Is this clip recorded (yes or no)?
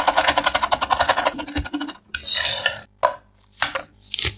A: yes